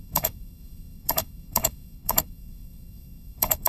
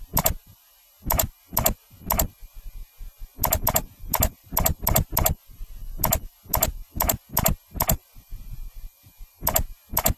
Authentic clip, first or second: second